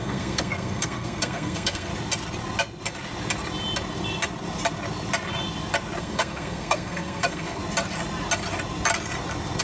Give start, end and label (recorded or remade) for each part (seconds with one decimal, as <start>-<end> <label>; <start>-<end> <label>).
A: 0.0-1.9 remade; 1.9-6.0 recorded; 6.0-7.6 remade; 7.6-9.6 recorded